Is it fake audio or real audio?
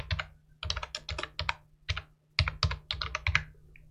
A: real